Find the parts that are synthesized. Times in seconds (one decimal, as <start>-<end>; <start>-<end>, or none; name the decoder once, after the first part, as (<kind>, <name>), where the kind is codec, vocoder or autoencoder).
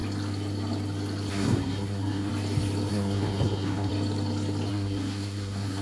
1.3-2.3 (codec, SNAC); 2.9-3.9; 4.7-5.8